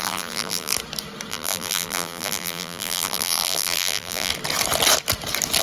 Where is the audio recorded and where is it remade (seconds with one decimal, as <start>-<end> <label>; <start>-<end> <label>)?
0.0-0.7 remade; 0.7-1.3 recorded; 1.3-4.3 remade; 4.3-5.6 recorded